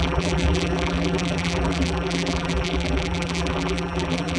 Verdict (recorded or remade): remade